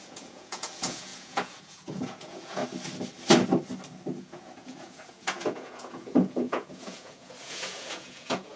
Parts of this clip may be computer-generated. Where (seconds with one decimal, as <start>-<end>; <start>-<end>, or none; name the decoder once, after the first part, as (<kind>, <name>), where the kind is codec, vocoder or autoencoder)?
0.0-2.6 (vocoder, Vocos); 4.2-8.6

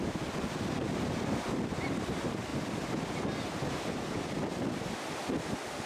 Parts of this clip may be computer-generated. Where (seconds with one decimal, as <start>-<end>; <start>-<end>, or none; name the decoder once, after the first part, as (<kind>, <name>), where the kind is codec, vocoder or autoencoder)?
none

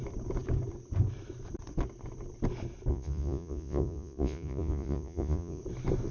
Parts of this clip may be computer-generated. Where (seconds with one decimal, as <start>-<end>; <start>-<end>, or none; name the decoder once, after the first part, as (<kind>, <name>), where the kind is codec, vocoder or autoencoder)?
2.9-5.6 (vocoder, Vocos)

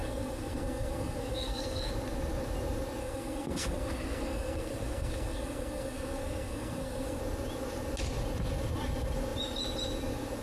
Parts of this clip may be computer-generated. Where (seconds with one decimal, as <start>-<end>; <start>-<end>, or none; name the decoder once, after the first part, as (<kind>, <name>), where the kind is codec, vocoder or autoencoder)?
0.0-1.9 (codec, SNAC); 3.0-7.2

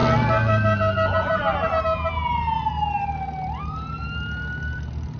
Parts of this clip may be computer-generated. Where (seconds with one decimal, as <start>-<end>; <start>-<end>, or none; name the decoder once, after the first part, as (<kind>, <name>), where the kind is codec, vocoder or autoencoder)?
none